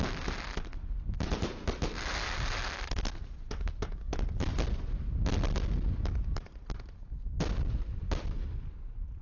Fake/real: real